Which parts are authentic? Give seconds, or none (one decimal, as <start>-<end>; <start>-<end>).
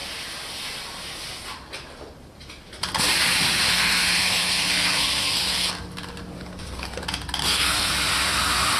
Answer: 0.0-3.7; 5.7-6.4; 7.0-7.4; 7.9-8.8